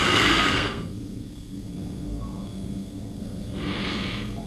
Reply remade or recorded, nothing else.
remade